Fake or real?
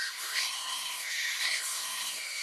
fake